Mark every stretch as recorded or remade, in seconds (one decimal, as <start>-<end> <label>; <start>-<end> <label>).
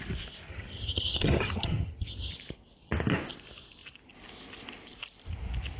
0.0-0.5 recorded; 0.5-2.3 remade; 2.3-5.8 recorded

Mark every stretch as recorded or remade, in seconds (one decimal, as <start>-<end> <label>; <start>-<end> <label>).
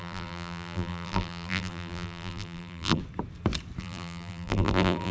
0.0-3.0 remade; 3.0-3.8 recorded; 3.8-5.1 remade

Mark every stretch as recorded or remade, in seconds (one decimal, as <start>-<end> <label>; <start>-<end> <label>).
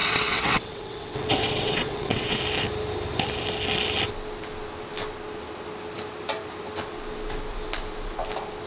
0.0-2.4 remade; 2.4-8.7 recorded